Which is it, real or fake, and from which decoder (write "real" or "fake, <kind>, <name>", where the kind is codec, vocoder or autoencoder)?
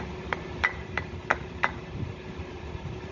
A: fake, vocoder, BigVGAN v2